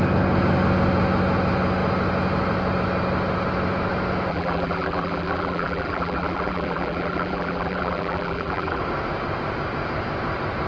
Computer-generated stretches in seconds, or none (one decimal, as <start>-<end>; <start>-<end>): 4.3-8.8